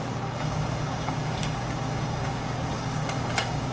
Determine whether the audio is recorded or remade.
remade